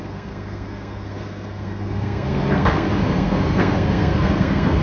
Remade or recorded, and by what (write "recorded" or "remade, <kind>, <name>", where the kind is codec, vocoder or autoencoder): remade, codec, SNAC